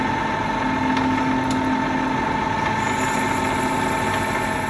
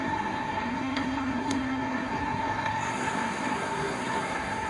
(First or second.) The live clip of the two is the first